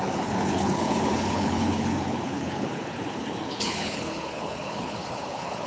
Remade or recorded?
remade